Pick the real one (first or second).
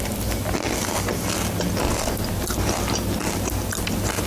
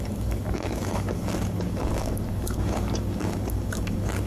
first